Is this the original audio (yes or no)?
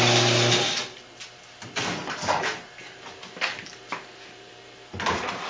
yes